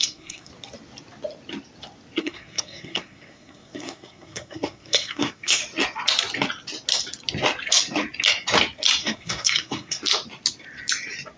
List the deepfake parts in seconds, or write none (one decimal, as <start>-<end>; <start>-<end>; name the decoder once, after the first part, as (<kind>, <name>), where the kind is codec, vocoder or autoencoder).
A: 0.0-0.5 (codec, SNAC); 2.2-5.6; 9.0-10.0